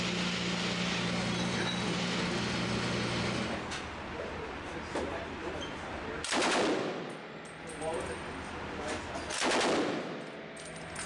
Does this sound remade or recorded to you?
recorded